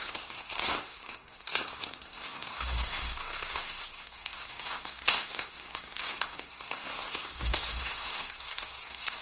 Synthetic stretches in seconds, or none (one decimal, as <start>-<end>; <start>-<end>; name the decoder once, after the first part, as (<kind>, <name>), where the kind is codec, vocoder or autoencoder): 0.0-9.2 (codec, SNAC)